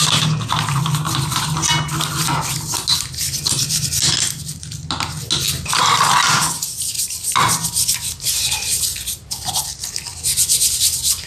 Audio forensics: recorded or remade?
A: recorded